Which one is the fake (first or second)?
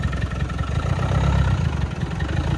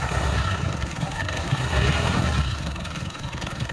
second